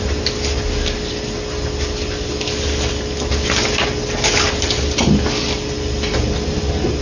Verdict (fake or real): real